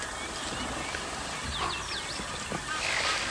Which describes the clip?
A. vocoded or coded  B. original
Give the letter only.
B